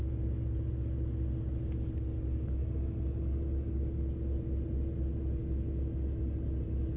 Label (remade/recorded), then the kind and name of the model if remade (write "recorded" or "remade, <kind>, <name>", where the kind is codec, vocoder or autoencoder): recorded